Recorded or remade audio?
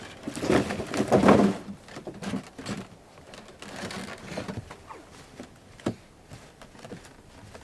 recorded